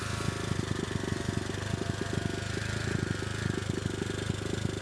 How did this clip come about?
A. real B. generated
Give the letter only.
A